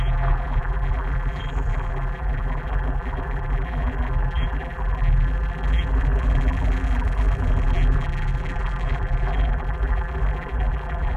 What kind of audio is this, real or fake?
fake